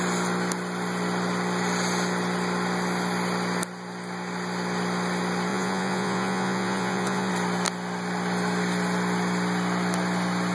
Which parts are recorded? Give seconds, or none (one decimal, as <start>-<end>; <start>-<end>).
0.0-5.5; 7.3-10.5